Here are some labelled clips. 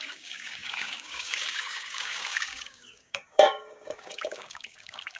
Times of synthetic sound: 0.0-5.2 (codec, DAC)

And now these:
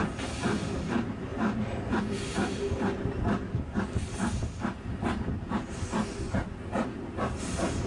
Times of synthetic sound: none

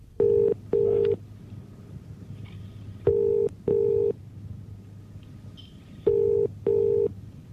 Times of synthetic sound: none

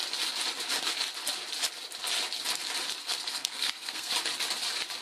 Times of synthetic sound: 3.0-4.1 (codec, SNAC)

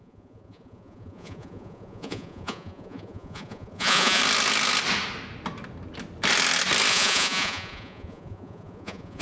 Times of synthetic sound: 0.0-4.2 (vocoder, Vocos); 6.9-9.2

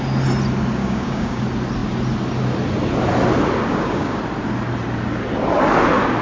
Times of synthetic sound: 0.8-1.4 (codec, DAC); 3.7-4.2

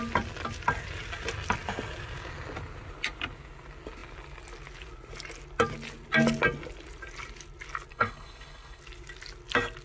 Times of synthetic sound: 7.9-8.8 (codec, HILCodec)

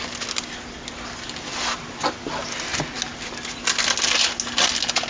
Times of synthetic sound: none